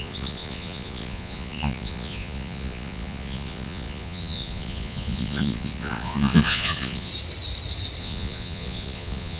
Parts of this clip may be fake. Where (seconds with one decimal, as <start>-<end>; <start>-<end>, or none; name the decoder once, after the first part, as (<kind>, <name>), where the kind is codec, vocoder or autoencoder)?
0.0-7.1 (vocoder, Vocos); 8.0-9.4